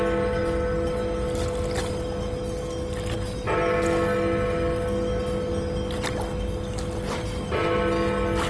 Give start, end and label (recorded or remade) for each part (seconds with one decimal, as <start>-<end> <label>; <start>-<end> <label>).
0.0-8.5 recorded

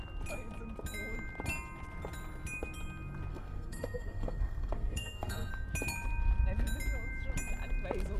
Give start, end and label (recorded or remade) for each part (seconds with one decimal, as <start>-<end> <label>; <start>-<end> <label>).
0.0-3.3 recorded; 3.3-5.5 remade; 5.5-8.2 recorded